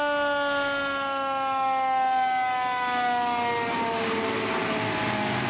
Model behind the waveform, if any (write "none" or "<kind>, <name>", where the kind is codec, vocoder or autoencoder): none